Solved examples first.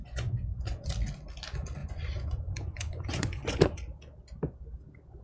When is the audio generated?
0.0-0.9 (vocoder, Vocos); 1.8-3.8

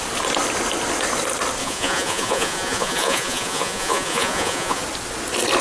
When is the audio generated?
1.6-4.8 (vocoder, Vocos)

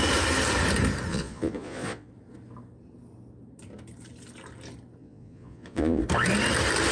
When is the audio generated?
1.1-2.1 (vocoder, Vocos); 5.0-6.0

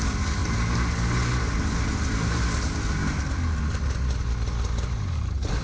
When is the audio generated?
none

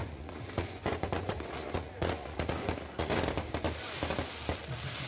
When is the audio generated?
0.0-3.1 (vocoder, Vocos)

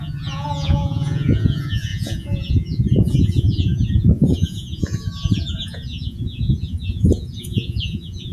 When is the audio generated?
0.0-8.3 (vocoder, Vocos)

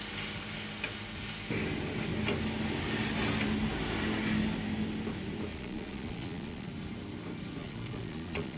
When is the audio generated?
5.5-6.7 (vocoder, Vocos); 7.6-8.6